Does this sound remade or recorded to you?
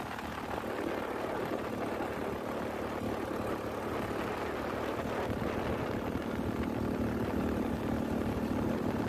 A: recorded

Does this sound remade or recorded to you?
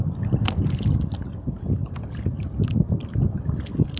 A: recorded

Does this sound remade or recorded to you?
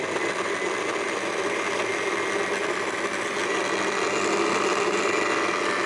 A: recorded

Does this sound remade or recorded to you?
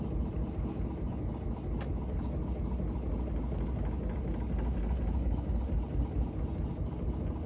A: recorded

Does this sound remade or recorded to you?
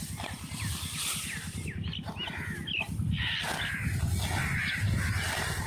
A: recorded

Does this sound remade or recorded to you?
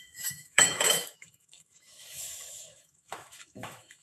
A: remade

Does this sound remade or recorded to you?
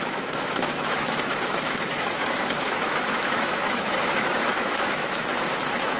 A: remade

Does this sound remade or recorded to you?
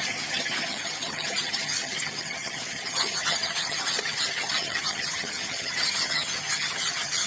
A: remade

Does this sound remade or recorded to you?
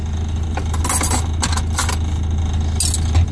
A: recorded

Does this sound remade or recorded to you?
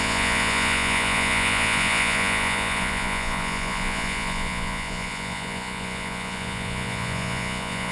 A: remade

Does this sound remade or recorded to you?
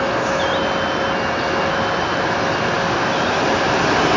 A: recorded